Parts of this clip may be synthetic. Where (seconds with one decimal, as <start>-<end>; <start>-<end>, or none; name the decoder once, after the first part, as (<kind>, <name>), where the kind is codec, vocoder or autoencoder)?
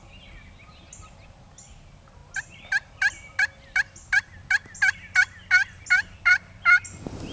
none